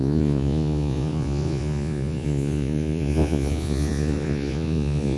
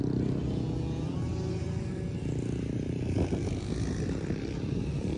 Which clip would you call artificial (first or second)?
first